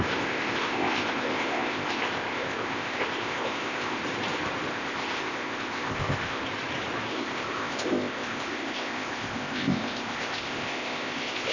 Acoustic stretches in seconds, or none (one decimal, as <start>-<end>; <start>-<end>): 4.0-4.7; 6.4-7.1